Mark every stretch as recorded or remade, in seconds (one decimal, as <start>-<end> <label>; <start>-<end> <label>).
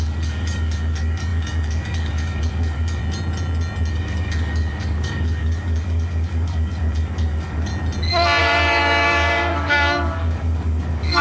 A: 0.0-3.0 remade; 3.0-3.9 recorded; 3.9-7.7 remade; 7.7-8.4 recorded; 8.4-11.2 remade